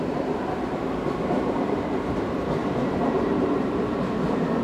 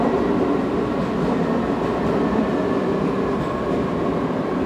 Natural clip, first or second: second